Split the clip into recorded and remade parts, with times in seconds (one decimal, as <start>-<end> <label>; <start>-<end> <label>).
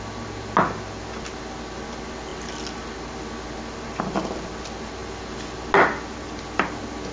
0.0-7.1 recorded